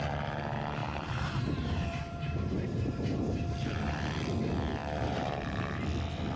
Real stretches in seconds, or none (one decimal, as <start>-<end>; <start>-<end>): 0.0-0.8; 3.8-4.8; 5.8-6.4